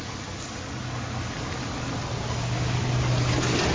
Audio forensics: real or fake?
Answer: real